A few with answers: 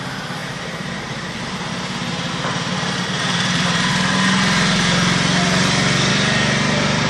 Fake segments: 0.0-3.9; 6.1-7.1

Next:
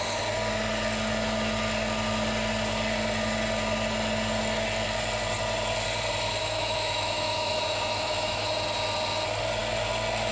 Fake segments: 6.4-8.5

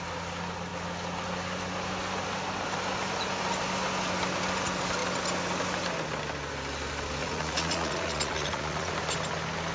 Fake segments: 7.2-8.9

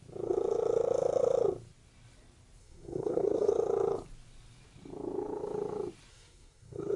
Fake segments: 2.6-3.5; 6.1-7.0

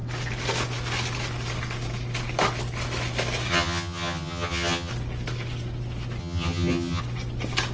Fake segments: 3.5-4.9; 6.2-7.0

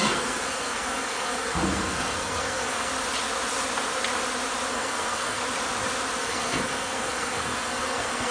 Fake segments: 0.0-2.9; 4.7-5.4; 6.2-8.3

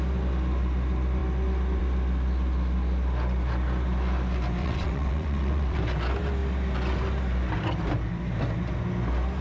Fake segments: 4.6-5.8

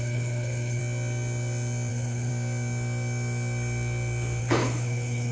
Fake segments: 0.0-0.8; 1.9-2.3; 4.4-5.3